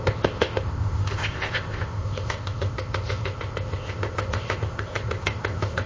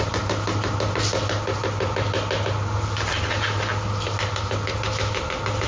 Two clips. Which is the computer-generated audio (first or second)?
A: first